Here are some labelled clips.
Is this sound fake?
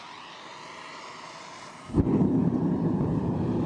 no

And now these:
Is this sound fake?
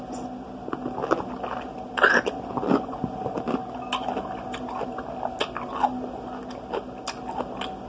no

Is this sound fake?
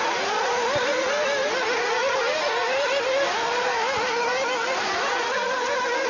no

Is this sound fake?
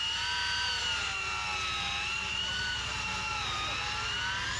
no